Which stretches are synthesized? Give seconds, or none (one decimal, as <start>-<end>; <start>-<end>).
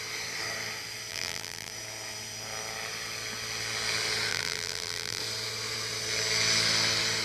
1.1-1.7; 4.3-5.2